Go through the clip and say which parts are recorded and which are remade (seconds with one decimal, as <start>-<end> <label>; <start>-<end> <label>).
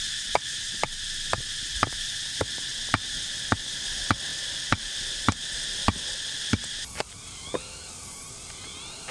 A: 0.0-4.3 recorded; 4.3-4.8 remade; 4.8-9.1 recorded